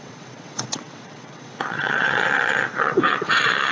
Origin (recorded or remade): remade